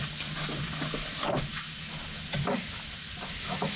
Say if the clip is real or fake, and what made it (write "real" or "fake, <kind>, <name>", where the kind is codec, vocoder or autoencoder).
real